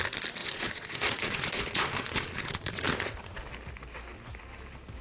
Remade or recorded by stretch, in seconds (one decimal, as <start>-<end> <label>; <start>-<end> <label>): 0.0-0.4 recorded; 0.4-3.4 remade; 3.4-5.0 recorded